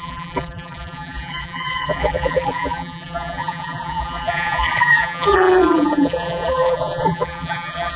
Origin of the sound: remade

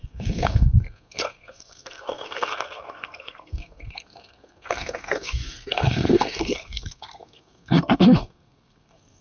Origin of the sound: remade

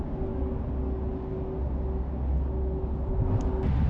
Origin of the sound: recorded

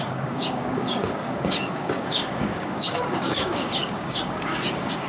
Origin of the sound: remade